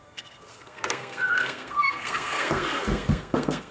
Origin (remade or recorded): remade